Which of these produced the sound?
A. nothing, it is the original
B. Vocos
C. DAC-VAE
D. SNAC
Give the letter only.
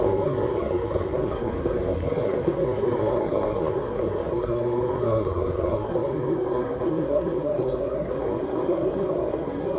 D